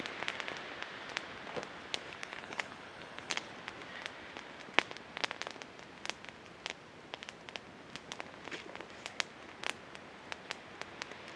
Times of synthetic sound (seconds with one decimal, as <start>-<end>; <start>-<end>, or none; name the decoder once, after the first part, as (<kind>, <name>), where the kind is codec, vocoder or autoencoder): 2.2-3.5 (codec, HILCodec)